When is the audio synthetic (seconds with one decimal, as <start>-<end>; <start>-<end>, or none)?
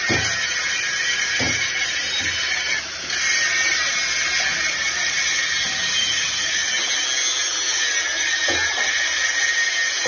none